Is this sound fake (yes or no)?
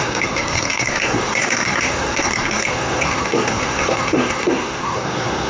yes